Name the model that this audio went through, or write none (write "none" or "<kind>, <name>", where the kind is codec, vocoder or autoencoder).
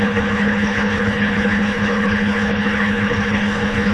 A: codec, HILCodec